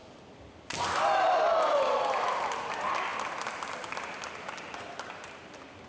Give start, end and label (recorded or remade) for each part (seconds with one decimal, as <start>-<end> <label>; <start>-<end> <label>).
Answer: 0.0-5.9 recorded